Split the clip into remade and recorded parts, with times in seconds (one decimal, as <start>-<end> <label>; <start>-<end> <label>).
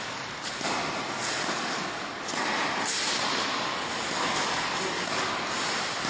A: 0.0-6.1 recorded